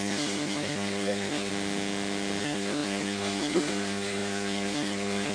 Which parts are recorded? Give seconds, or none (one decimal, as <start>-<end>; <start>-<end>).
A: 1.5-2.4